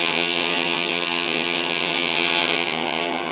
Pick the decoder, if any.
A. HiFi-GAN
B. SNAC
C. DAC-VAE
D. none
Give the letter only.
A